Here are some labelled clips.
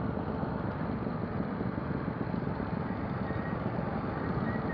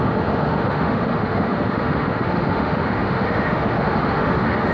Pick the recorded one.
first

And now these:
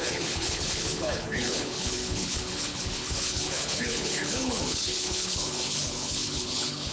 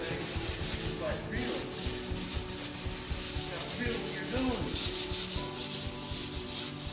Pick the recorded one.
second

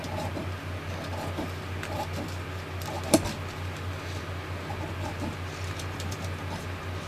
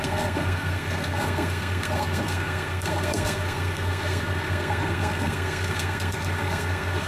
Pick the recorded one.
first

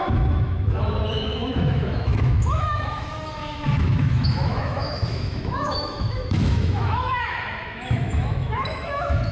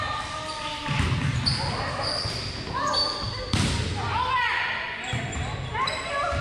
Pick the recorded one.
second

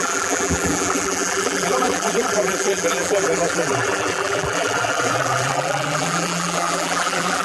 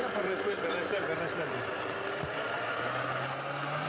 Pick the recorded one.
second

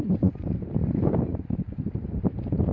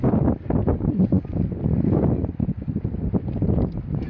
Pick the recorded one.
second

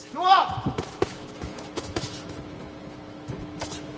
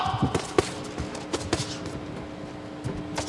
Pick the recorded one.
second